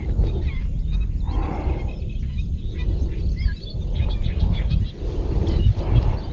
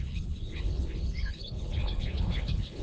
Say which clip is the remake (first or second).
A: second